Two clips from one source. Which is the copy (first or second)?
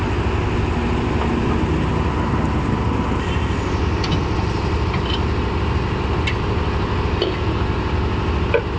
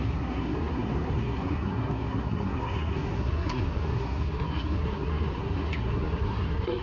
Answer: second